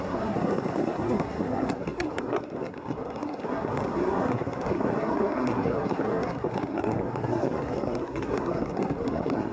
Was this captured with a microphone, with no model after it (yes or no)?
no